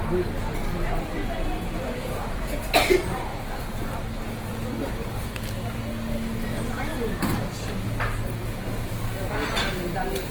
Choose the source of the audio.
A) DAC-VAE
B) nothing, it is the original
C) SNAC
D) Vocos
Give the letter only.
B